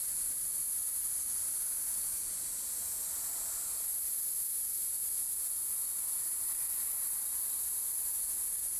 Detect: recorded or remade recorded